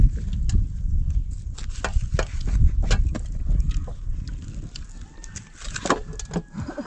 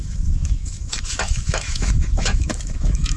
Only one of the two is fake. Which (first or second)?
second